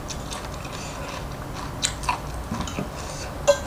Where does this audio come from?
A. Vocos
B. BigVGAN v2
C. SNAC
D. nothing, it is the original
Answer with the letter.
D